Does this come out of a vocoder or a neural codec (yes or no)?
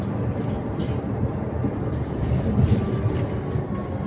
no